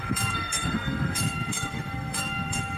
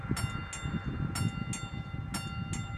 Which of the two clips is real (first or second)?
second